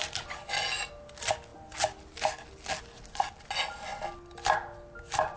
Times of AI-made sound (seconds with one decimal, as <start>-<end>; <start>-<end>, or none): none